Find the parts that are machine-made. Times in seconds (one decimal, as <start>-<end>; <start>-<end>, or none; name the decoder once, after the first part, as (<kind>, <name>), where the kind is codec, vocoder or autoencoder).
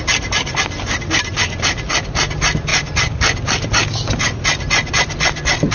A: none